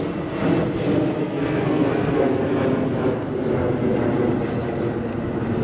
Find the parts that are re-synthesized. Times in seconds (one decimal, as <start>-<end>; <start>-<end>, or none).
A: 1.2-2.4